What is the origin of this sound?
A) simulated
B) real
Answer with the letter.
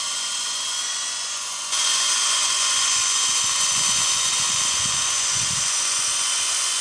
A